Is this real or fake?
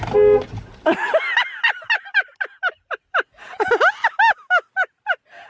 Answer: real